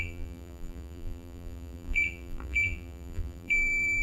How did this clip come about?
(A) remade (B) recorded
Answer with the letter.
A